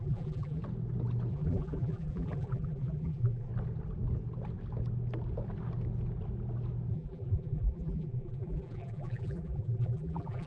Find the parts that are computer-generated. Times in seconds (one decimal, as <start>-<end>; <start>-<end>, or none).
0.0-0.6; 1.3-3.5; 6.9-10.5